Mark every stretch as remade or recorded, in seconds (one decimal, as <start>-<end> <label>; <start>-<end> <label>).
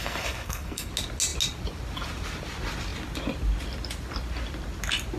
0.0-0.9 remade; 0.9-5.2 recorded